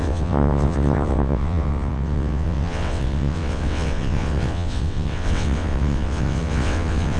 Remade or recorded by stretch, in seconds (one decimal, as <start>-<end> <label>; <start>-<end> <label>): 0.0-7.2 remade